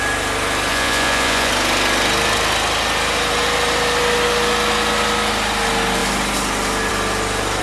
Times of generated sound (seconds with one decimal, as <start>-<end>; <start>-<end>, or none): 0.7-1.5